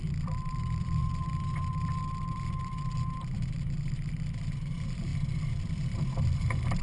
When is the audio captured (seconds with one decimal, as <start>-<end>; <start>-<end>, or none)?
none